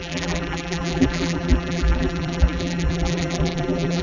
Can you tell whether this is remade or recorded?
remade